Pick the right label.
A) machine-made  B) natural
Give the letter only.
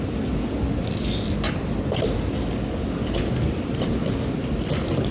B